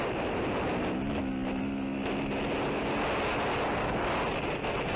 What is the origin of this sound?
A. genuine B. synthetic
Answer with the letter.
A